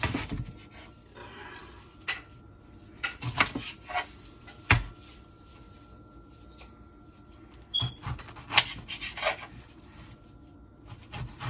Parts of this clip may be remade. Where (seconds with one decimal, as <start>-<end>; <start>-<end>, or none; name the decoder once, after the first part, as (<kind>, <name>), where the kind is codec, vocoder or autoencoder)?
none